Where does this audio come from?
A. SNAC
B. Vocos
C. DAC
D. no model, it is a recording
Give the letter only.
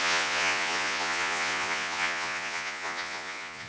B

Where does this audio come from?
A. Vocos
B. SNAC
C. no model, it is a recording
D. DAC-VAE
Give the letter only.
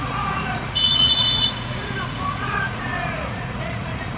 A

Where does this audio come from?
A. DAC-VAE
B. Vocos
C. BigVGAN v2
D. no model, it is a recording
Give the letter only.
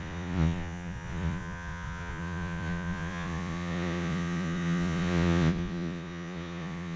B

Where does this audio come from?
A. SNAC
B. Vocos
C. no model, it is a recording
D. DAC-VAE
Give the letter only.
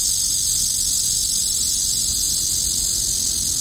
C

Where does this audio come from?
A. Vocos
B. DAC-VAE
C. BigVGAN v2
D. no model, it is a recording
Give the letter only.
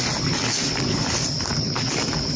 D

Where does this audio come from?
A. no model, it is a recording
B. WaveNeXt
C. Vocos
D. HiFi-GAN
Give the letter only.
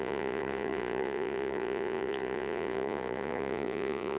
C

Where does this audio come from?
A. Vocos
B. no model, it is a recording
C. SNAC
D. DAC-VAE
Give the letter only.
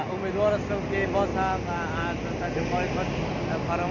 B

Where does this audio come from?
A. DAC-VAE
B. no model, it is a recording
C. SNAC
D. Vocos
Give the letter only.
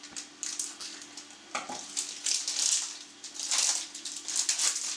B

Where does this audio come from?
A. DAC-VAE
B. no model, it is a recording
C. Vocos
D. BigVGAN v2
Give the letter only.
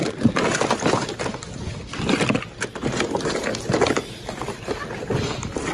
B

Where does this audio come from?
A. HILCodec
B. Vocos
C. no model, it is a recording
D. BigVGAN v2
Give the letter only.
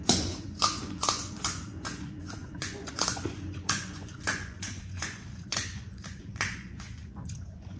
B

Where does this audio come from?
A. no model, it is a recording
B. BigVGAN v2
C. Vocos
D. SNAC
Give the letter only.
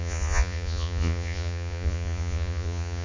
C